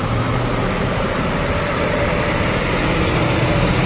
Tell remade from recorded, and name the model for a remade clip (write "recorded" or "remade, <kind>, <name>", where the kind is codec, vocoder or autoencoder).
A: remade, vocoder, BigVGAN v2